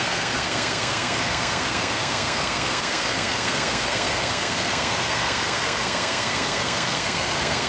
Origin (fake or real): fake